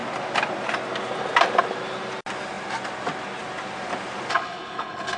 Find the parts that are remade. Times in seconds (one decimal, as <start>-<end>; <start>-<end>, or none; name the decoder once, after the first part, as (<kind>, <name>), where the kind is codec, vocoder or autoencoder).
4.3-5.2 (codec, HILCodec)